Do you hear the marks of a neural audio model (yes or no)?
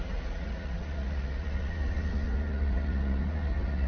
yes